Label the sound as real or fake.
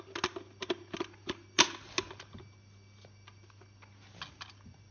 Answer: real